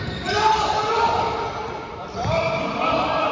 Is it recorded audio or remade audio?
recorded